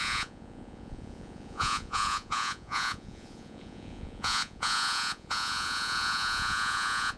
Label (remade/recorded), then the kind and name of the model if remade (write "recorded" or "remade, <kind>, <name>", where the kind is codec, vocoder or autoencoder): remade, vocoder, Vocos